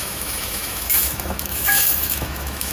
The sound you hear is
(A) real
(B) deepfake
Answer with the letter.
B